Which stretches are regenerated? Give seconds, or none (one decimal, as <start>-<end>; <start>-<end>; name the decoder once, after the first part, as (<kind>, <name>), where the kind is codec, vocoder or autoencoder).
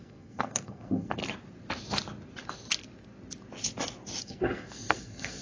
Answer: 0.0-1.2 (codec, SNAC); 4.2-5.4